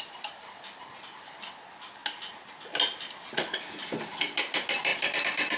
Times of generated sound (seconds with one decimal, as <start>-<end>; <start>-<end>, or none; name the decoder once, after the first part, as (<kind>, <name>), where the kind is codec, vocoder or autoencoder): none